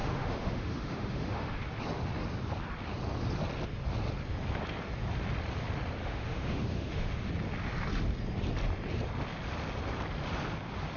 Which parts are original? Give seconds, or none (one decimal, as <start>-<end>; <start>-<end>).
1.6-6.0; 7.3-11.0